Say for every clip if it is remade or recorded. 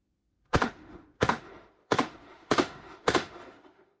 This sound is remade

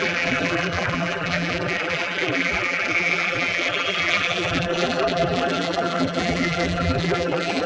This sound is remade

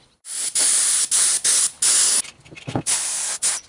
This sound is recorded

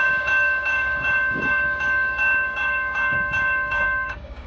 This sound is remade